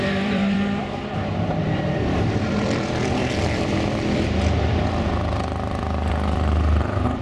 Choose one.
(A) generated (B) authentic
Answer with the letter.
A